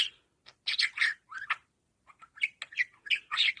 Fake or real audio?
real